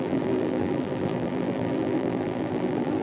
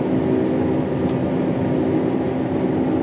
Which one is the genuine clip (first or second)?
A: second